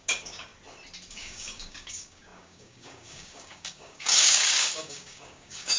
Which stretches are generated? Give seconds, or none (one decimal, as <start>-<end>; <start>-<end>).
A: 0.0-0.5; 1.1-5.8